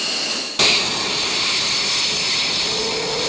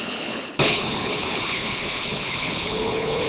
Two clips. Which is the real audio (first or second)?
first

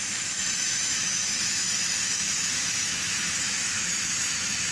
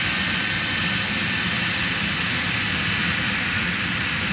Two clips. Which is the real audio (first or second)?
second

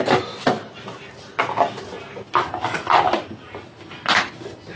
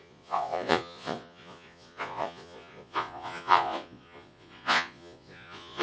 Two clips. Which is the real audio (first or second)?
first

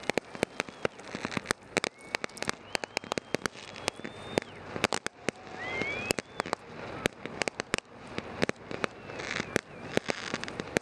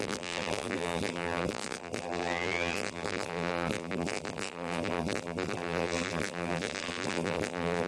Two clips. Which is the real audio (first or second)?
first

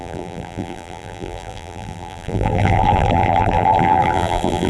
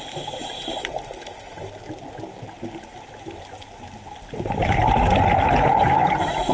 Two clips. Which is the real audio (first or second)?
second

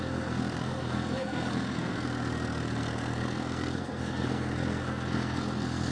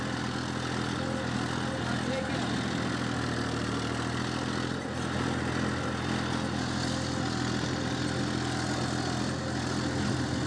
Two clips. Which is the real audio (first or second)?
second